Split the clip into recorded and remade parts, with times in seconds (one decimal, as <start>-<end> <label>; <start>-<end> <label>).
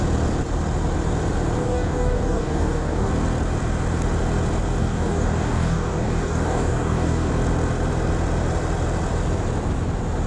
0.0-1.6 recorded; 1.6-3.1 remade; 3.1-4.8 recorded; 4.8-7.3 remade; 7.3-10.3 recorded